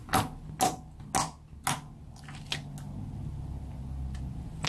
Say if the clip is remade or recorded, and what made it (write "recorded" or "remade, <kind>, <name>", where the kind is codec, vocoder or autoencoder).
recorded